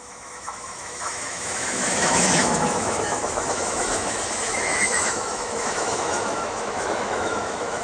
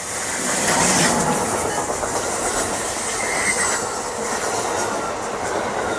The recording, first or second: second